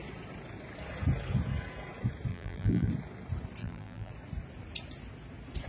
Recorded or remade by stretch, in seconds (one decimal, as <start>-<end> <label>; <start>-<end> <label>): 0.0-2.3 recorded; 2.3-2.9 remade; 2.9-3.6 recorded; 3.6-4.1 remade; 4.1-5.7 recorded